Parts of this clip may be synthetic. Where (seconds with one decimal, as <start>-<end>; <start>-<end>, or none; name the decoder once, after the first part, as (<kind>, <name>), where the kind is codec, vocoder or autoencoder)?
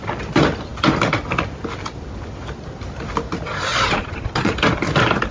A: 3.7-4.5 (vocoder, Vocos)